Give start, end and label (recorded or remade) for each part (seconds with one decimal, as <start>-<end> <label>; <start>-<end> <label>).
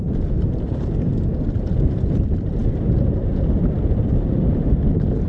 0.0-5.3 recorded